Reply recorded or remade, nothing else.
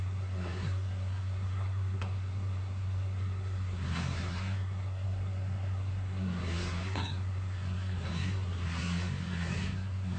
remade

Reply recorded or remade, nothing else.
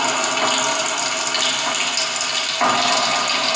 recorded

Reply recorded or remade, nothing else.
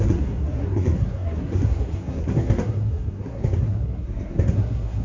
remade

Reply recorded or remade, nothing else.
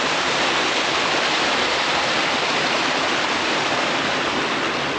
recorded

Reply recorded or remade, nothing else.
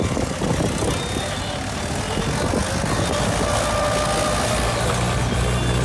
recorded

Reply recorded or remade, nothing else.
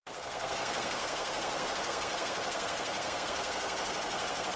remade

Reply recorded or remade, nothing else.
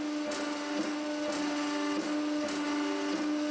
recorded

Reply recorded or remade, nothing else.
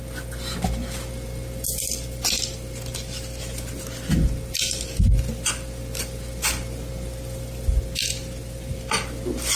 recorded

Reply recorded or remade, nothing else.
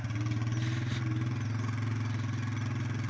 recorded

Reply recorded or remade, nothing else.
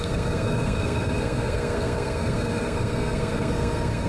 remade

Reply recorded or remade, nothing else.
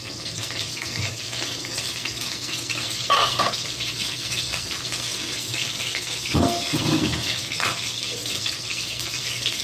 remade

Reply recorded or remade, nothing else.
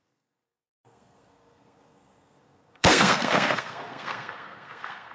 remade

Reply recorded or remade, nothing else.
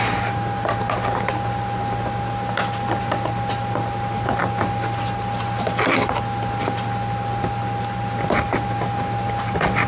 recorded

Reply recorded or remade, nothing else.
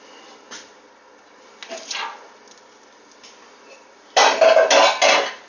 recorded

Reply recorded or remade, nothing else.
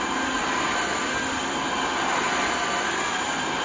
recorded